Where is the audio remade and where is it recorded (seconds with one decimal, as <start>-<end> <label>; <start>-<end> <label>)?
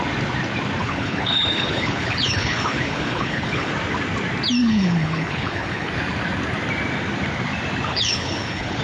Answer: 0.0-0.8 recorded; 0.8-3.7 remade; 3.7-4.6 recorded; 4.6-5.9 remade; 5.9-7.9 recorded; 7.9-8.8 remade